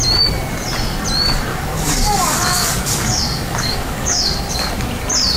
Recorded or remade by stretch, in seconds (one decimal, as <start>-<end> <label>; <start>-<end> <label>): 0.0-1.5 recorded; 1.5-4.7 remade; 4.7-5.4 recorded